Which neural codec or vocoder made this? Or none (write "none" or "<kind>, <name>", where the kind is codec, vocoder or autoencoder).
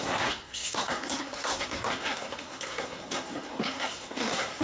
codec, SNAC